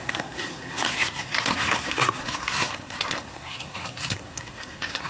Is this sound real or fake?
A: fake